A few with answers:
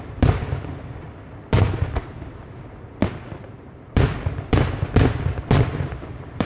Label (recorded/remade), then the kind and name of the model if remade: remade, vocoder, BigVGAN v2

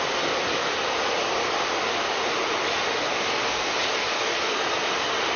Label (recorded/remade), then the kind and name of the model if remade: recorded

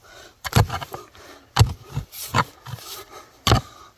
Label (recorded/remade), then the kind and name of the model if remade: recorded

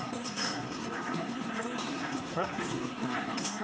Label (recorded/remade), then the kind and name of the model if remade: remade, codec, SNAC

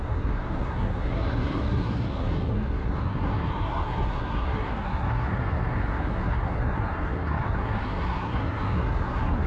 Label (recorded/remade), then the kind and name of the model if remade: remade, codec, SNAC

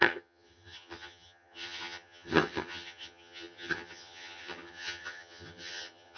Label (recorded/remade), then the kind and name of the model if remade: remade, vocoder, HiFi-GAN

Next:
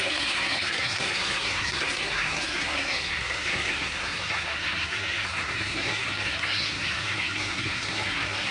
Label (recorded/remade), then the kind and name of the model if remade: remade, codec, SNAC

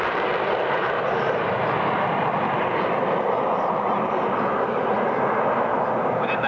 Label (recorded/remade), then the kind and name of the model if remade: recorded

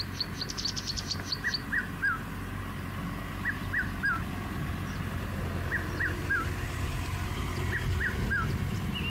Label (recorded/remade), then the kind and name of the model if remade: recorded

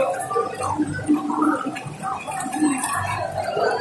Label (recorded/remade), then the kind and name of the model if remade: recorded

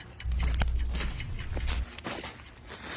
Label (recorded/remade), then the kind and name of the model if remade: recorded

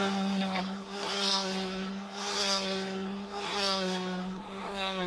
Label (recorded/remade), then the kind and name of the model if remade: remade, codec, SNAC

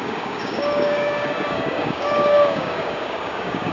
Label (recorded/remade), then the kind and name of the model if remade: remade, codec, DAC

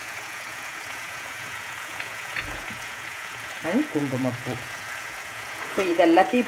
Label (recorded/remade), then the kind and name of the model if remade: remade, vocoder, Vocos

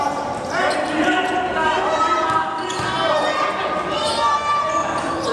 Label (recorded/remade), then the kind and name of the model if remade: recorded